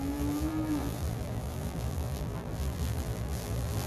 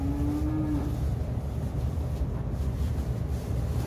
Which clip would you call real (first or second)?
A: second